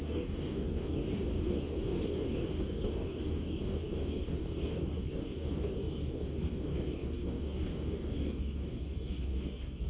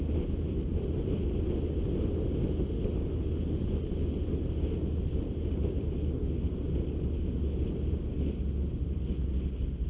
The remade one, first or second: first